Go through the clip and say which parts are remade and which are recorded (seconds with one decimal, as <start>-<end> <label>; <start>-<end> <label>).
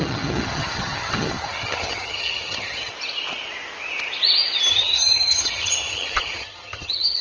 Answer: 0.0-2.9 remade; 2.9-4.7 recorded; 4.7-7.2 remade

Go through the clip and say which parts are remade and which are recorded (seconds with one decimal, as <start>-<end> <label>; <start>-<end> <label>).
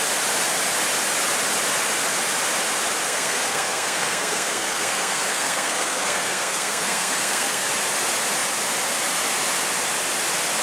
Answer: 0.0-3.0 recorded; 3.0-7.7 remade; 7.7-10.6 recorded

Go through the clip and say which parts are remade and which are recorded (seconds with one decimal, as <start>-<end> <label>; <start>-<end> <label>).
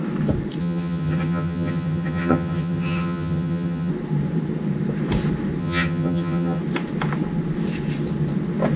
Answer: 0.0-0.6 recorded; 0.6-3.9 remade; 3.9-5.6 recorded; 5.6-6.6 remade; 6.6-8.8 recorded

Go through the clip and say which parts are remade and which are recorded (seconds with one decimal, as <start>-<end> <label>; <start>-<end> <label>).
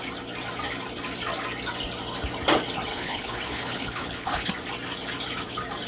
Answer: 0.0-2.9 recorded; 2.9-4.5 remade; 4.5-5.9 recorded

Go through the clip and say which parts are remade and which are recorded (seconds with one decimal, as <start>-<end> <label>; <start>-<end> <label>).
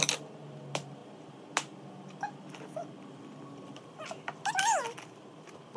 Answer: 0.0-5.8 recorded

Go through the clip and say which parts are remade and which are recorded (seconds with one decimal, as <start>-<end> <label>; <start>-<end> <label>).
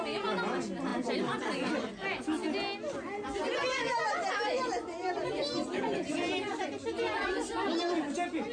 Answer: 0.0-8.5 recorded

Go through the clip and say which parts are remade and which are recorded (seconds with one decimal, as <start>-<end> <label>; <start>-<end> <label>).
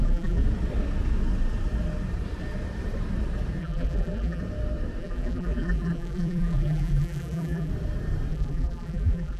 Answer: 0.0-0.4 remade; 0.4-3.6 recorded; 3.6-4.4 remade; 4.4-5.0 recorded; 5.0-7.7 remade; 7.7-8.3 recorded; 8.3-9.4 remade